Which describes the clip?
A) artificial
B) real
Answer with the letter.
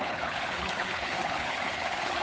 A